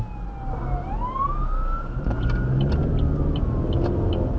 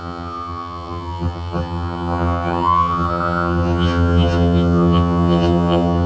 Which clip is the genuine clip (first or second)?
first